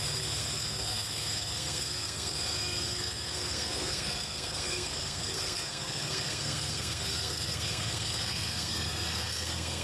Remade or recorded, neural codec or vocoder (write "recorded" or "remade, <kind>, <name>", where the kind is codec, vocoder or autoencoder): remade, codec, SNAC